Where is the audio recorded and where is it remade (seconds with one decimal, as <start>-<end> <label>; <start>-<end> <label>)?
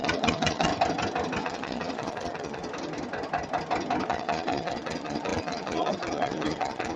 0.0-0.7 remade; 0.7-1.4 recorded; 1.4-2.6 remade; 2.6-4.1 recorded; 4.1-7.0 remade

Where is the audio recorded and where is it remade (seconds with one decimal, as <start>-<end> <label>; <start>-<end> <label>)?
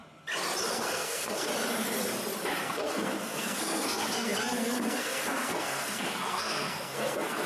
0.0-0.7 recorded; 0.7-1.5 remade; 1.5-2.6 recorded; 2.6-7.5 remade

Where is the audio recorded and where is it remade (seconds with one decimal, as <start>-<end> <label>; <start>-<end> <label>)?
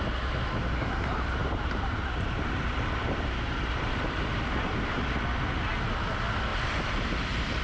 0.0-1.4 recorded; 1.4-5.0 remade; 5.0-6.5 recorded; 6.5-7.6 remade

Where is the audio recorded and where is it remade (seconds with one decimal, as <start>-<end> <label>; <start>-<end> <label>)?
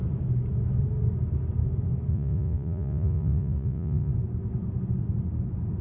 0.0-2.1 recorded; 2.1-4.1 remade; 4.1-5.8 recorded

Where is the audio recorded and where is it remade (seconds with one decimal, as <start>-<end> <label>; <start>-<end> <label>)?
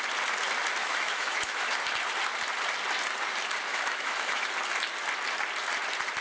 0.0-0.8 recorded; 0.8-1.7 remade; 1.7-3.7 recorded; 3.7-4.5 remade; 4.5-6.2 recorded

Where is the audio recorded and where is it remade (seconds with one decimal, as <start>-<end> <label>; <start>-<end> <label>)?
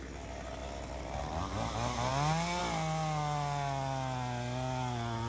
0.0-5.3 recorded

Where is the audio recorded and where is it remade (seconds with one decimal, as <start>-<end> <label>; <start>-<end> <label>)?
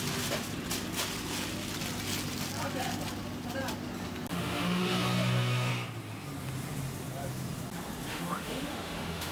0.0-4.3 recorded; 4.3-5.7 remade; 5.7-8.1 recorded; 8.1-9.3 remade